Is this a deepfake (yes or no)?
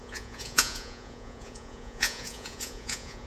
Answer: yes